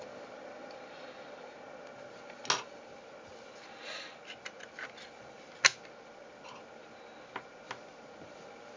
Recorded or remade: recorded